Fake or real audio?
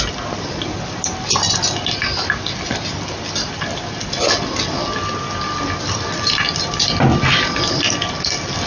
real